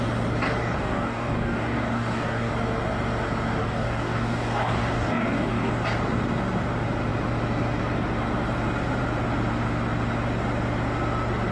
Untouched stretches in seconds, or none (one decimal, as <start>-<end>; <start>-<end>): 0.0-0.6; 2.5-3.6; 5.7-11.5